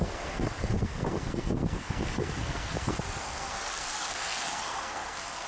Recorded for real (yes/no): no